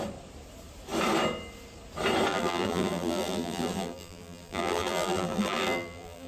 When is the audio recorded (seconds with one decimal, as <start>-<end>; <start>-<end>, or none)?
0.0-2.3